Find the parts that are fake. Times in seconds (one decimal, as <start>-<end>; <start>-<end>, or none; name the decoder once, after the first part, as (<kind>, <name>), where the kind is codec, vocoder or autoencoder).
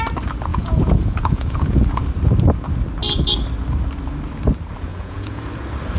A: 0.5-2.0 (vocoder, Vocos); 4.9-5.4